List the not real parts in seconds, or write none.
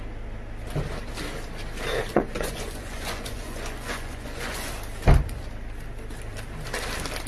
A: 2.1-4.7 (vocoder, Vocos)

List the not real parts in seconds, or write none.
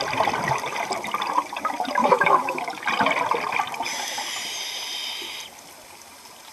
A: 2.0-2.6 (autoencoder, DAC-VAE)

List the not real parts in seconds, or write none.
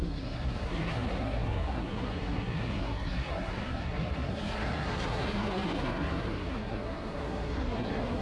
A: 0.0-8.2 (codec, SNAC)